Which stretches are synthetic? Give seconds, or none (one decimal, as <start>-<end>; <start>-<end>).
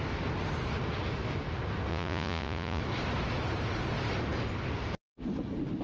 1.9-2.8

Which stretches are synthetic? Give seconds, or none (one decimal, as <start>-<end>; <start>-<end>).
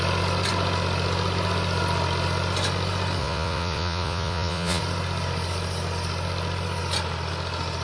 3.2-4.8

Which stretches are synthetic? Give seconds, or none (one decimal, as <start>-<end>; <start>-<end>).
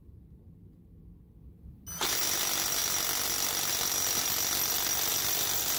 none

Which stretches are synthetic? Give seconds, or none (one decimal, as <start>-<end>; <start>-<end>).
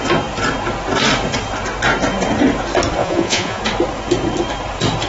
3.0-3.6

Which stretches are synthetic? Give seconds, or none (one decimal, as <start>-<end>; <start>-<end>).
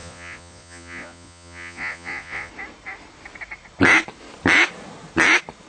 0.0-2.5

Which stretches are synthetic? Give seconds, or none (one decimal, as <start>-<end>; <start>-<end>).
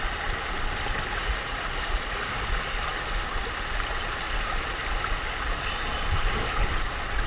1.2-2.3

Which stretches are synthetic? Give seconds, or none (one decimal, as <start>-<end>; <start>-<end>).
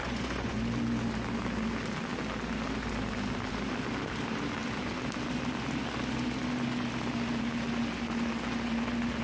0.0-0.6